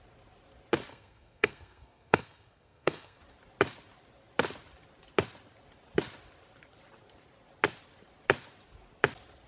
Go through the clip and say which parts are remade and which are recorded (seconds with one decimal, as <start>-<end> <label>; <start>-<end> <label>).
0.0-0.9 recorded; 0.9-3.2 remade; 3.2-9.5 recorded